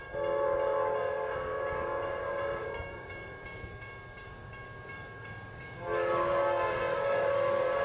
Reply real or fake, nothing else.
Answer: fake